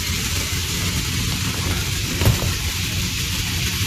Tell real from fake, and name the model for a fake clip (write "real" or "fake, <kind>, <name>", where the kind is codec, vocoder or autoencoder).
fake, vocoder, BigVGAN v2